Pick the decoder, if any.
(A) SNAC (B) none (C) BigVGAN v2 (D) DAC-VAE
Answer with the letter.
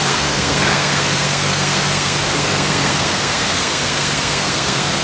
A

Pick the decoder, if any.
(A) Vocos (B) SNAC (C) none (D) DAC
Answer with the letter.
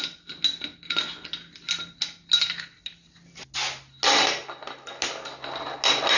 C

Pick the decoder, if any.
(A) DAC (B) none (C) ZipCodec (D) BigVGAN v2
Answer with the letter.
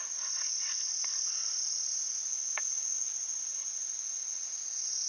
B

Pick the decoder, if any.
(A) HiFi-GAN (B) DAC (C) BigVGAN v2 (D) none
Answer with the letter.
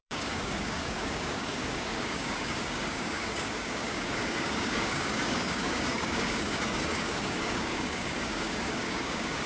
B